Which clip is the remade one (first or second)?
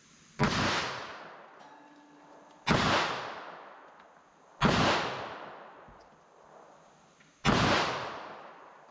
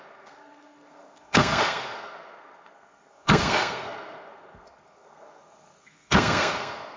second